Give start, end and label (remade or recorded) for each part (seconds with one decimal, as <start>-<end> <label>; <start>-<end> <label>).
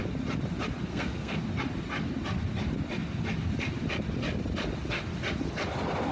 0.0-0.9 recorded; 0.9-1.4 remade; 1.4-6.1 recorded